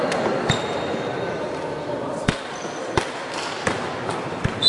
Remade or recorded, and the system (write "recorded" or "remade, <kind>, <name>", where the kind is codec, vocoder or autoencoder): remade, vocoder, BigVGAN v2